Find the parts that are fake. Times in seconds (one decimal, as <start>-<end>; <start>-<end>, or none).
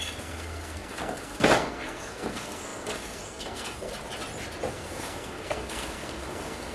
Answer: 0.0-3.9; 4.7-6.7